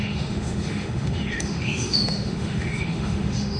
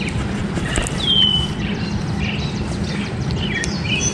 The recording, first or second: second